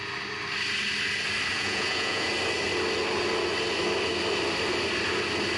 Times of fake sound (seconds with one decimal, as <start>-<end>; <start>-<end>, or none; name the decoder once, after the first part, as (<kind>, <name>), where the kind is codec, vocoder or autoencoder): 1.5-2.3 (vocoder, Vocos)